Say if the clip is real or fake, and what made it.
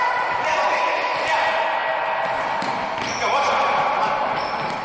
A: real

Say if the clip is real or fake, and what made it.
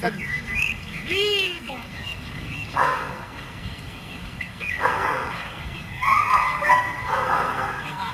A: fake, codec, SNAC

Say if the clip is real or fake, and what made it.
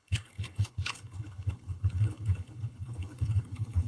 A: fake, codec, HILCodec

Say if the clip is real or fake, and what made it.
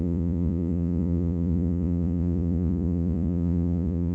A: fake, vocoder, Vocos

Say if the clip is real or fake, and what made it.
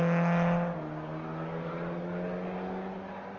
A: real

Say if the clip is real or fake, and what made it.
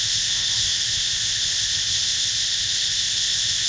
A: fake, codec, ZipCodec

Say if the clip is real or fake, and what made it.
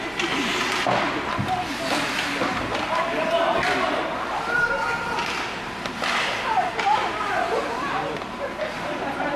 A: real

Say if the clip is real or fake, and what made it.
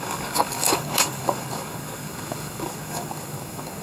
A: fake, codec, DAC